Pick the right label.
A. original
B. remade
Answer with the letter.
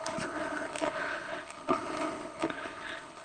B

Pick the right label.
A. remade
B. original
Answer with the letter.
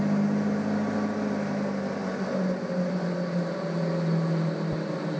B